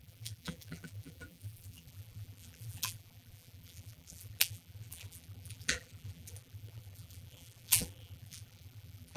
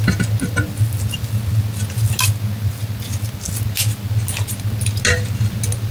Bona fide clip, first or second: second